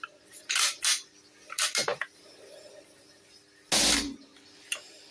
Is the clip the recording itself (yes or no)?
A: yes